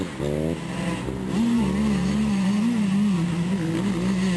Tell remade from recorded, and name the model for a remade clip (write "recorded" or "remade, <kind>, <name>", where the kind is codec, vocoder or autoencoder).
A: recorded